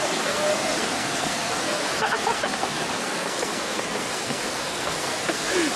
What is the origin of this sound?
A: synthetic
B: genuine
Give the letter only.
A